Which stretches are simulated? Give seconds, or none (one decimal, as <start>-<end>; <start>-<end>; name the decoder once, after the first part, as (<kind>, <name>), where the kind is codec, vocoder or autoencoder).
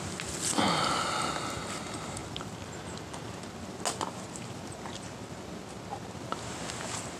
none